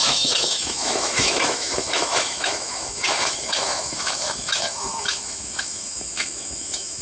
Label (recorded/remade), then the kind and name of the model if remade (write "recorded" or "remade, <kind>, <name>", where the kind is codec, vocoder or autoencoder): remade, autoencoder, DAC-VAE